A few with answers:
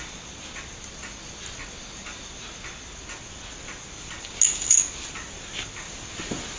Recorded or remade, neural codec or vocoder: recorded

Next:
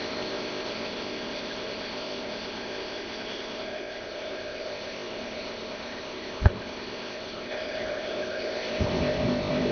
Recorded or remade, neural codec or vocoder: remade, codec, ZipCodec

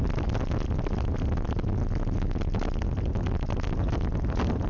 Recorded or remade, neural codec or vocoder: recorded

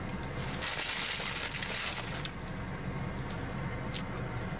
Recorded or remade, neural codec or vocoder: recorded